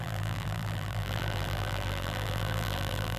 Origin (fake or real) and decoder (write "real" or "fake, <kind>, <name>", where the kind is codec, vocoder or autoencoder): fake, vocoder, BigVGAN v2